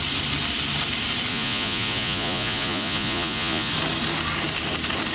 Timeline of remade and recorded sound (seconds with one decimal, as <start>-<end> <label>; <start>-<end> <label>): 0.0-1.3 recorded; 1.3-3.7 remade; 3.7-5.1 recorded